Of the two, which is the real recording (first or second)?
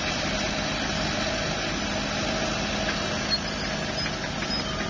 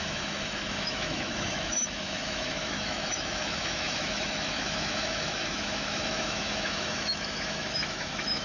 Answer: first